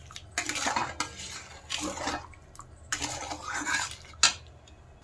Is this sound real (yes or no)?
yes